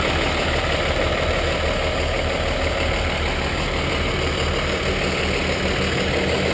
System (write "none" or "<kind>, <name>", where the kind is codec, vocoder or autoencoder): none